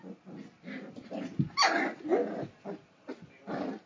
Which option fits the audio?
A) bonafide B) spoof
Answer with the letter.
A